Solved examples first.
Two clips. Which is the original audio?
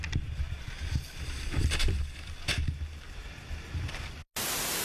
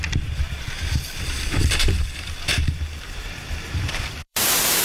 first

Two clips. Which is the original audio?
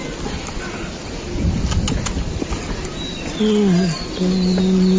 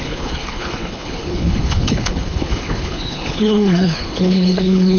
first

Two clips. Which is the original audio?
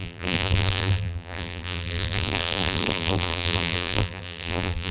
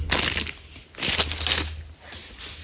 second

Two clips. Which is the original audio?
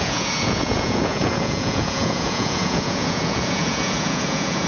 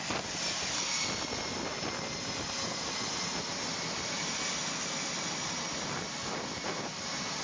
second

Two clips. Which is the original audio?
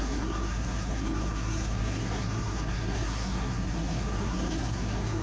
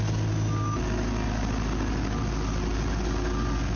second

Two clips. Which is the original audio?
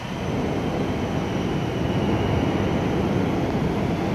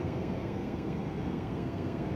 first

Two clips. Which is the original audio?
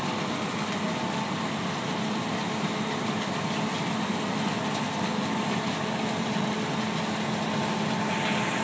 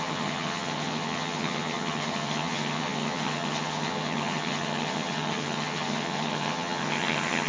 first